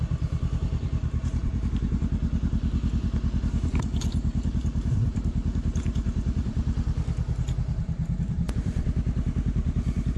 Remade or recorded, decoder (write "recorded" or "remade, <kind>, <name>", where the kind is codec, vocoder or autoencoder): remade, vocoder, BigVGAN v2